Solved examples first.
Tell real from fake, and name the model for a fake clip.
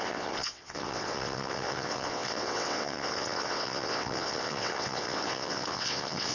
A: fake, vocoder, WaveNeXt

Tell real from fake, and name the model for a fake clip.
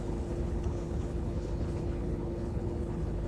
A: fake, codec, HILCodec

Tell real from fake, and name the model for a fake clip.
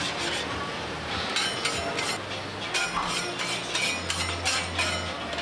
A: real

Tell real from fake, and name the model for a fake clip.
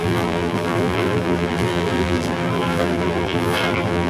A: fake, vocoder, BigVGAN v2